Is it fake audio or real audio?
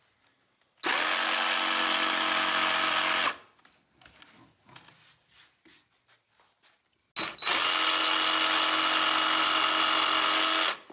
real